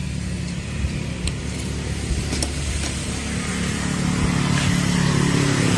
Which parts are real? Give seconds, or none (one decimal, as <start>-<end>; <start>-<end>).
0.0-5.8